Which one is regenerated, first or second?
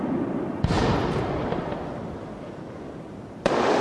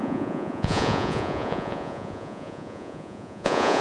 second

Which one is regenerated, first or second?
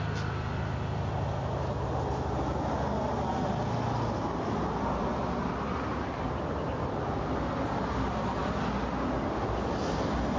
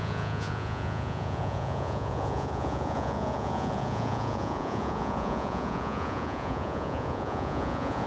second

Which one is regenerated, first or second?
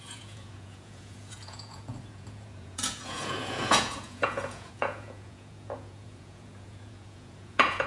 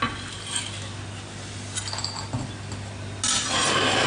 first